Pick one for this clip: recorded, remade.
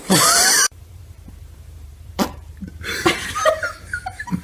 remade